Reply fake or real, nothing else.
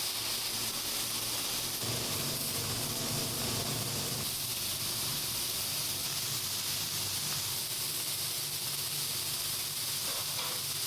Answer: real